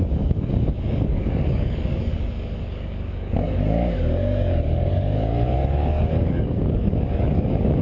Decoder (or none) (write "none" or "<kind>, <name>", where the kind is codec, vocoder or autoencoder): codec, DAC